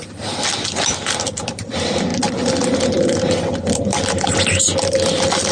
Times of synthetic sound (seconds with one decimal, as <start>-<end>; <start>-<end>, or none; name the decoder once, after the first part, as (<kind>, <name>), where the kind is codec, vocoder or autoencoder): none